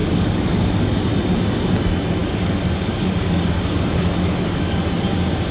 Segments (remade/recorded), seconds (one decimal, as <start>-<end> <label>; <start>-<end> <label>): 0.0-1.1 remade; 1.1-2.2 recorded; 2.2-4.8 remade; 4.8-5.5 recorded

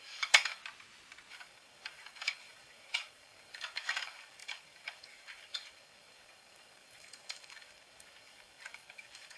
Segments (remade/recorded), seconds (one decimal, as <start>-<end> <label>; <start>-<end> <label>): 0.0-0.6 remade; 0.6-1.3 recorded; 1.3-9.4 remade

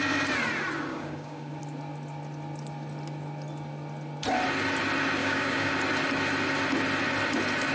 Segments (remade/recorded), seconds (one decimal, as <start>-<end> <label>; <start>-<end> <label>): 0.0-0.9 recorded; 0.9-1.6 remade; 1.6-5.2 recorded; 5.2-5.7 remade; 5.7-7.7 recorded

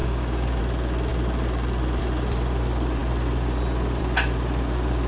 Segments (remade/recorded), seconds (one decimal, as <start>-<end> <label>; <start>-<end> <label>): 0.0-0.6 remade; 0.6-5.1 recorded

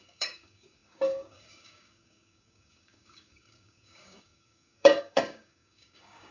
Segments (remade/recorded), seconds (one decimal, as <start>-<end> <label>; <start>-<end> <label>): 0.0-6.3 remade

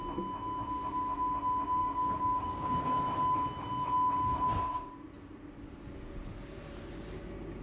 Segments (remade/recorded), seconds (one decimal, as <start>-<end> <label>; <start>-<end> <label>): 0.0-1.8 recorded; 1.8-2.8 remade; 2.8-7.6 recorded